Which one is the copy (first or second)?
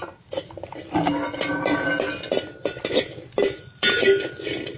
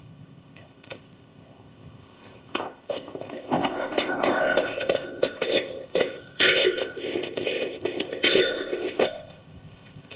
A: second